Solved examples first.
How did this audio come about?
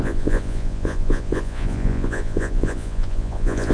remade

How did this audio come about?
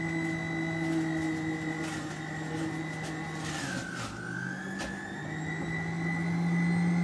recorded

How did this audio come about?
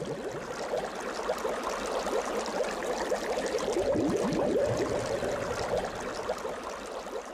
recorded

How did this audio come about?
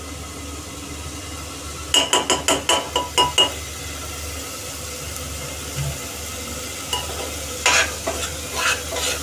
recorded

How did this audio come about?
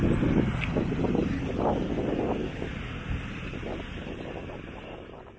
recorded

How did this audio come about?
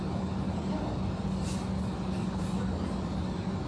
recorded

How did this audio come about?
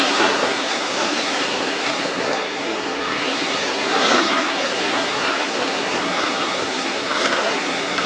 remade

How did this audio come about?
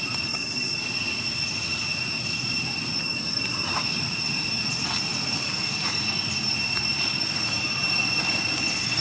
recorded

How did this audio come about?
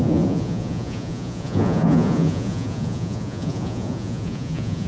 remade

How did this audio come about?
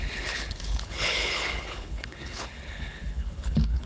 remade